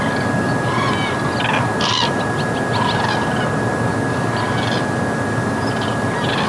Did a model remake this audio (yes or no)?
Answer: no